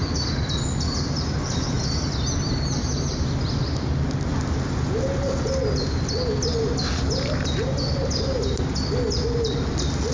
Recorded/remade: recorded